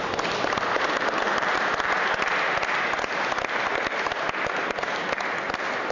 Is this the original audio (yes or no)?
yes